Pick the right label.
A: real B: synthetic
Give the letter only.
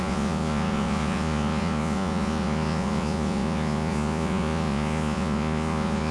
B